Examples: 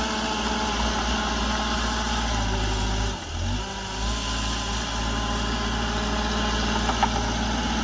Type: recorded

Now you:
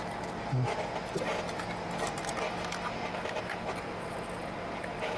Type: recorded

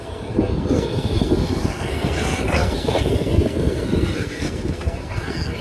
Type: remade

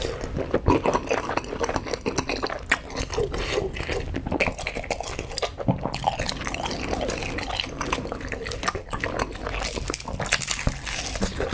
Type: recorded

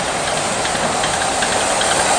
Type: recorded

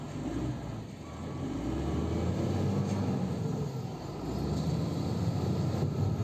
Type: recorded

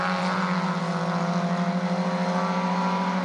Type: recorded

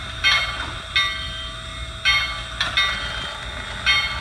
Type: recorded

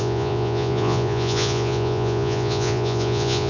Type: remade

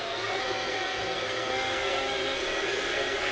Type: remade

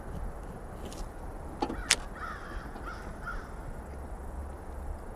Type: recorded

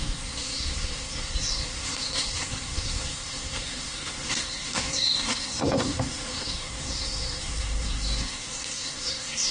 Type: remade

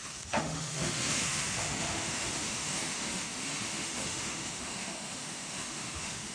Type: remade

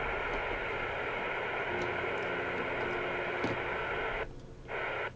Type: recorded